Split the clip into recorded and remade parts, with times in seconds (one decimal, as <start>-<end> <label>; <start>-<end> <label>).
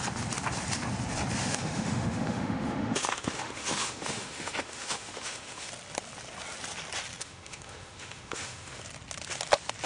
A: 0.0-1.4 recorded; 1.4-5.7 remade; 5.7-7.2 recorded; 7.2-8.8 remade; 8.8-9.9 recorded